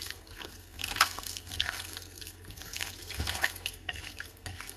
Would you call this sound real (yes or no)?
no